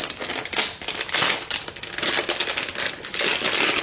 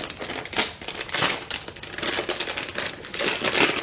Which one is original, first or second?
first